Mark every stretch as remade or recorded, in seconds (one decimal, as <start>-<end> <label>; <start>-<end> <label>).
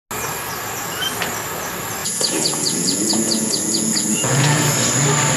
0.0-2.0 recorded; 2.0-4.6 remade; 4.6-5.4 recorded